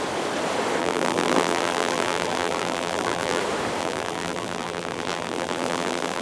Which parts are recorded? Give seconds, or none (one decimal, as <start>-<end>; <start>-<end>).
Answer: 0.0-0.8; 3.4-3.8